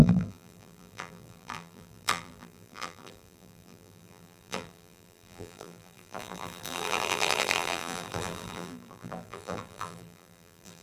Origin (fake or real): fake